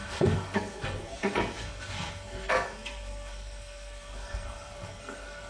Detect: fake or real fake